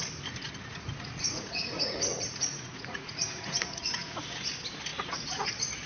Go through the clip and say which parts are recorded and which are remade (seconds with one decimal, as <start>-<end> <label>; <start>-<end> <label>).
0.0-0.7 recorded; 0.7-4.2 remade; 4.2-4.9 recorded; 4.9-5.5 remade; 5.5-5.9 recorded